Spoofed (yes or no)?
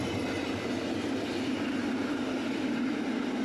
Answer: no